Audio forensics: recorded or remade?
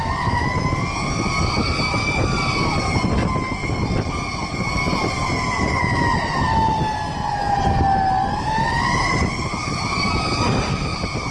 recorded